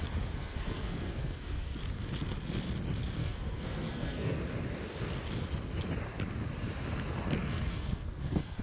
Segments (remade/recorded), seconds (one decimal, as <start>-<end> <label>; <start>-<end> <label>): 0.0-0.4 recorded; 0.4-1.8 remade; 1.8-3.2 recorded; 3.2-4.4 remade; 4.4-7.4 recorded; 7.4-8.6 remade